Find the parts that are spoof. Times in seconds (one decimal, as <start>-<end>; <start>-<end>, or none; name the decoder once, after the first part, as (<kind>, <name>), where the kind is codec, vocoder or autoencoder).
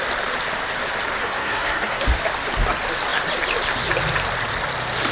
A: 1.2-2.0 (codec, SNAC)